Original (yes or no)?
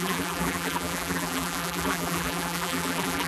no